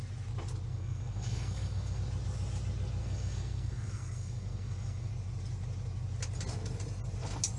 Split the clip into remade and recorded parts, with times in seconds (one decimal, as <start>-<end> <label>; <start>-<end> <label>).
0.0-0.7 recorded; 0.7-2.0 remade; 2.0-3.0 recorded; 3.0-5.1 remade; 5.1-7.6 recorded